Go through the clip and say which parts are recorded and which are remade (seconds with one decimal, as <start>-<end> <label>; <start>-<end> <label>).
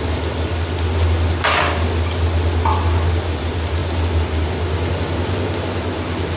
0.0-6.4 recorded